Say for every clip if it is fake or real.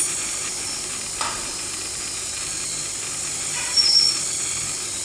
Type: real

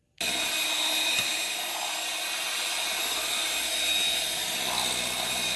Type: real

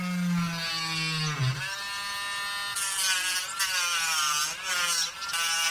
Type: real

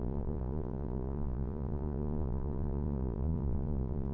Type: fake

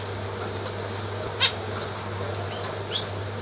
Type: real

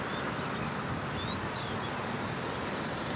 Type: real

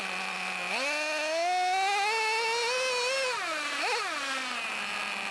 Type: real